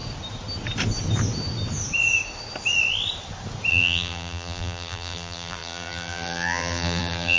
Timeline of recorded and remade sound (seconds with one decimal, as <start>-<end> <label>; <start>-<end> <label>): 0.0-3.7 recorded; 3.7-7.4 remade